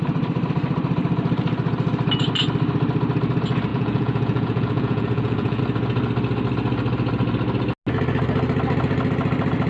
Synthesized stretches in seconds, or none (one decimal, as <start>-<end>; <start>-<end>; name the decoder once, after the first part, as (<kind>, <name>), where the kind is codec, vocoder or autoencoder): 3.7-5.6 (vocoder, Vocos)